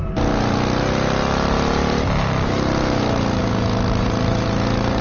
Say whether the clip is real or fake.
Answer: real